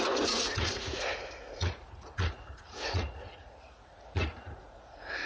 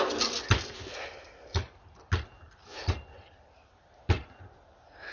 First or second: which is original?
second